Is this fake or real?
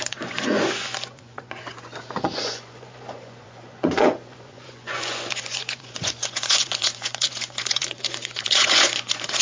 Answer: fake